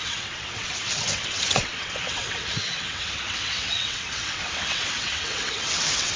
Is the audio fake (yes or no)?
yes